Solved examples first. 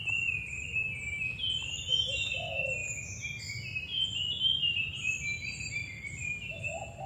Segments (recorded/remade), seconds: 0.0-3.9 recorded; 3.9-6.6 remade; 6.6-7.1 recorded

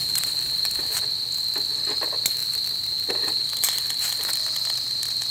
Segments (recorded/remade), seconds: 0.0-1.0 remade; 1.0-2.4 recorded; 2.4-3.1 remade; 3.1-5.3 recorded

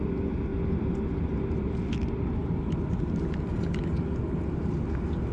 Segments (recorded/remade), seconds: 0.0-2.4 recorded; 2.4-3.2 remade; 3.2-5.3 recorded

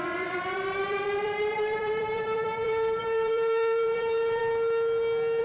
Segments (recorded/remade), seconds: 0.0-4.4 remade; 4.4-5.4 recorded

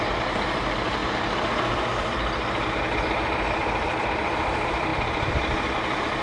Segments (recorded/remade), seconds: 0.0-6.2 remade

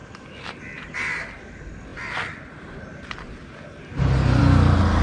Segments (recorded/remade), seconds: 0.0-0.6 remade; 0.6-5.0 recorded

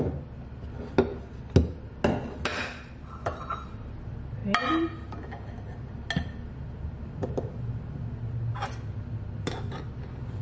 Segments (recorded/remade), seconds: 0.0-2.5 recorded; 2.5-3.6 remade; 3.6-10.4 recorded